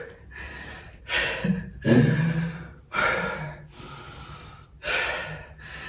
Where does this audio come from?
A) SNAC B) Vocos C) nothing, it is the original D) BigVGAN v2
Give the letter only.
C